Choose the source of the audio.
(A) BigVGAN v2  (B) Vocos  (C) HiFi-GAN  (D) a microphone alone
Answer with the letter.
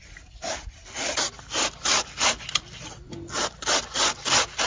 D